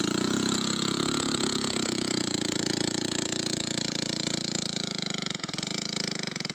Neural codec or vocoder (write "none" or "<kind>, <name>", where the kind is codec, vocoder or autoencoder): vocoder, Vocos